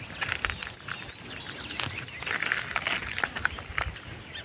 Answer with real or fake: real